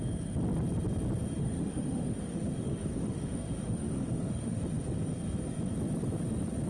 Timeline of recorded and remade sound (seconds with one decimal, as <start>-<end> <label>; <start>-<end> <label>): 0.0-1.4 recorded; 1.4-4.6 remade; 4.6-6.7 recorded